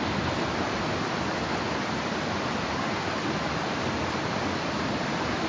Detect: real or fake real